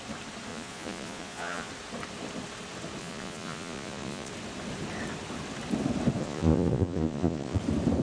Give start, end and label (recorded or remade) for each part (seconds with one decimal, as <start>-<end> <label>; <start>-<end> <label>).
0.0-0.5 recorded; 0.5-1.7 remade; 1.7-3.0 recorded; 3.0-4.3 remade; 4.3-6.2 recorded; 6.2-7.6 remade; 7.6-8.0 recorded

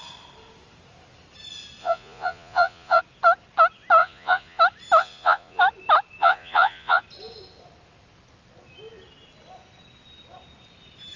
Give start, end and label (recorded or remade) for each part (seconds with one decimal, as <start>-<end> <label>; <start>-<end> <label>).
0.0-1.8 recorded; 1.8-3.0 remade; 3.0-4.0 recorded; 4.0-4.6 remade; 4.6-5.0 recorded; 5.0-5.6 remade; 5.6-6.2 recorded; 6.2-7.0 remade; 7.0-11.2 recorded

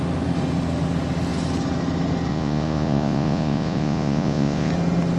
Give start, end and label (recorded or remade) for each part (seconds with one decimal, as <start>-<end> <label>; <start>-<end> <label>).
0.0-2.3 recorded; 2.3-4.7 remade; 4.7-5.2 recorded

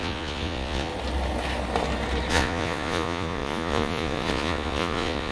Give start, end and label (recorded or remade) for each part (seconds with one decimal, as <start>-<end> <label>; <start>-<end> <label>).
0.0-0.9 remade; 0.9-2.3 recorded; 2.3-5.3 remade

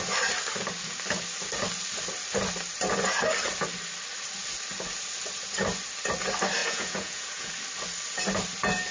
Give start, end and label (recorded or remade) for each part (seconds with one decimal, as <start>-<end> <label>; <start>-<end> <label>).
0.0-6.6 recorded; 6.6-7.5 remade; 7.5-8.9 recorded

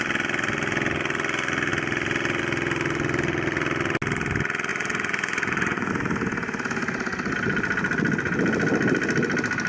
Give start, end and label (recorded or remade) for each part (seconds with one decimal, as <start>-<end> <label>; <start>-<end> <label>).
0.0-4.7 recorded; 4.7-5.9 remade; 5.9-9.7 recorded

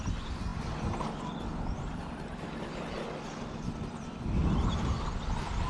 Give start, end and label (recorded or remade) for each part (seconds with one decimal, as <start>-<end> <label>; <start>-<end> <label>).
0.0-5.7 recorded

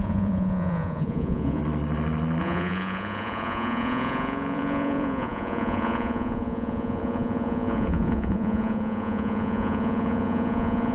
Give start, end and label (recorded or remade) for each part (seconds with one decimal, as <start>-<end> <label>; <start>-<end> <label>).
0.0-1.6 remade; 1.6-2.4 recorded; 2.4-10.9 remade